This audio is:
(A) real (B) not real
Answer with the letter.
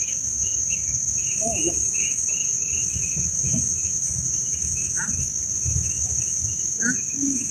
B